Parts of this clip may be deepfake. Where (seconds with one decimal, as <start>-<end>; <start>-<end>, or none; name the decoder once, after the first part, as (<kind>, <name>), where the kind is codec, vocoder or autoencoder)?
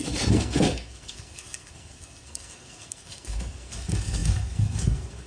0.0-5.3 (codec, SNAC)